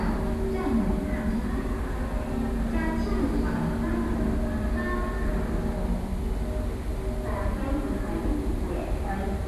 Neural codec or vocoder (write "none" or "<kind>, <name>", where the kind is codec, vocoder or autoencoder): none